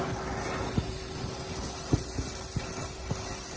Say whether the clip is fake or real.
real